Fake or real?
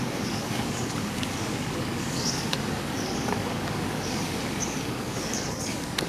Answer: fake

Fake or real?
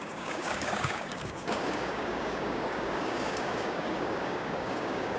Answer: fake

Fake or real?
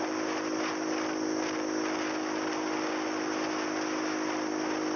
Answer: real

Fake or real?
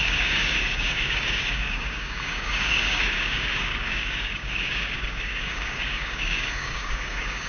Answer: fake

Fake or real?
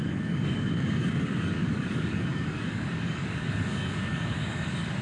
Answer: fake